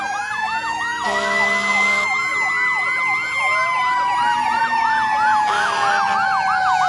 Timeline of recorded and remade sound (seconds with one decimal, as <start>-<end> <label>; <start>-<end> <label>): 0.0-3.6 recorded; 3.6-5.9 remade; 5.9-6.9 recorded